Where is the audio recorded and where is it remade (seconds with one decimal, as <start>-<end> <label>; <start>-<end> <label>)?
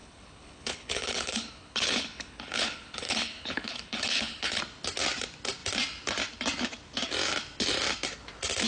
0.0-4.6 remade; 4.6-8.7 recorded